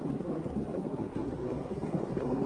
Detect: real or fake fake